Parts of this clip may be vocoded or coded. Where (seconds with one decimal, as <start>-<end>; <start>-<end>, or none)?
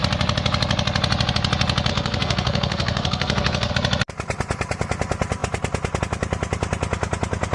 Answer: 1.9-3.7